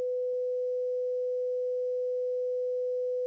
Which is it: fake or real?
real